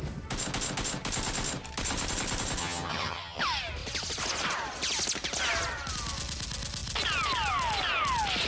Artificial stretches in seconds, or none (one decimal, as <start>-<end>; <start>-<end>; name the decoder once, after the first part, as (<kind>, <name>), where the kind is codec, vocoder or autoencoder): 2.6-3.4 (vocoder, HiFi-GAN)